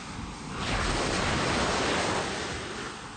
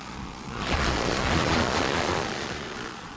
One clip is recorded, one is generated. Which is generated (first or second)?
second